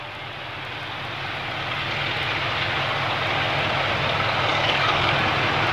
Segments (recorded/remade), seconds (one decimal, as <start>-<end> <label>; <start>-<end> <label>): 0.0-4.5 recorded; 4.5-5.1 remade; 5.1-5.7 recorded